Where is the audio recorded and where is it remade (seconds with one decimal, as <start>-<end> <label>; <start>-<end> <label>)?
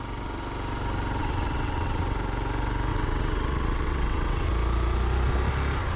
0.0-1.2 recorded; 1.2-2.0 remade; 2.0-2.9 recorded; 2.9-4.5 remade; 4.5-6.0 recorded